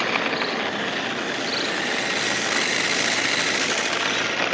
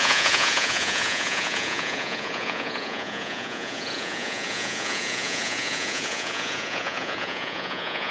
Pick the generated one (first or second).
second